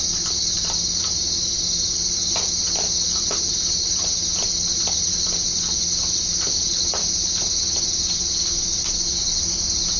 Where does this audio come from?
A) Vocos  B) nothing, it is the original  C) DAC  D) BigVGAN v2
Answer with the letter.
B